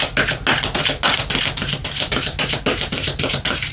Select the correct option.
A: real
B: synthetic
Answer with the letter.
A